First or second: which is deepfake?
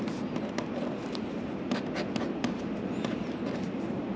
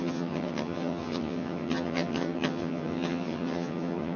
second